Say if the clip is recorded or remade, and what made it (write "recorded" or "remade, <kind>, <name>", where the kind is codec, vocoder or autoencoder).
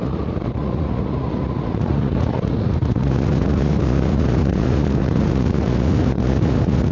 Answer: remade, vocoder, Vocos